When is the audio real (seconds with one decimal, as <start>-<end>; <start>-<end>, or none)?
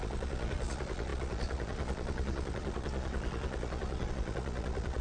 none